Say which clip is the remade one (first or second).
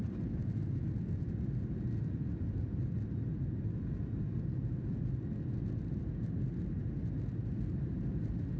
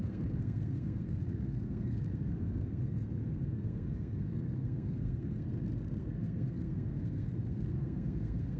second